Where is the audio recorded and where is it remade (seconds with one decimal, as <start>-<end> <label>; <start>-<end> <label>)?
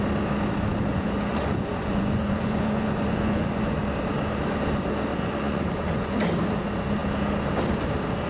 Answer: 0.0-0.9 recorded; 0.9-3.8 remade; 3.8-5.1 recorded; 5.1-6.2 remade; 6.2-8.3 recorded